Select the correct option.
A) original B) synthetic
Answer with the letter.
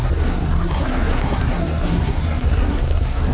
B